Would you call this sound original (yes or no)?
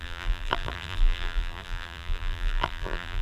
no